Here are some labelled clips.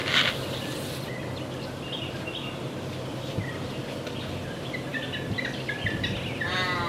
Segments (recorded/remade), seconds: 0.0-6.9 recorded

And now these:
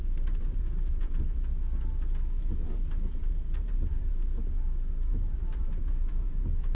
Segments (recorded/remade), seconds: 0.0-1.4 remade; 1.4-2.4 recorded; 2.4-4.1 remade; 4.1-5.1 recorded; 5.1-6.7 remade

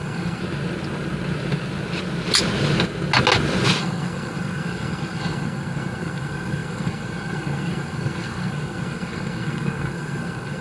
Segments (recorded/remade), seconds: 0.0-0.4 remade; 0.4-3.8 recorded; 3.8-10.6 remade